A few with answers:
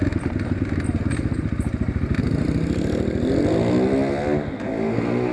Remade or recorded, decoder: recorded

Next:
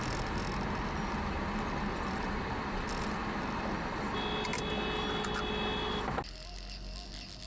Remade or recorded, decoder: recorded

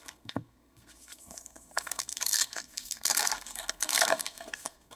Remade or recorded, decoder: remade, codec, SNAC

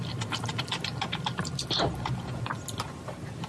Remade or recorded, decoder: recorded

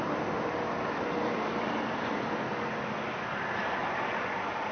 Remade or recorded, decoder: recorded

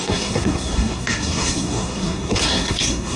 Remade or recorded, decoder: remade, codec, SNAC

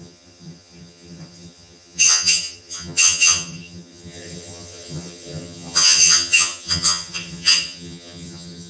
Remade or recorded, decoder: remade, vocoder, HiFi-GAN